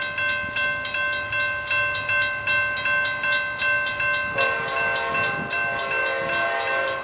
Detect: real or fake real